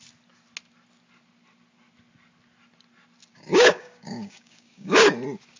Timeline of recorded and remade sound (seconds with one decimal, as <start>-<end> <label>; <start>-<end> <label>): 0.0-3.3 recorded; 3.3-5.1 remade; 5.1-5.6 recorded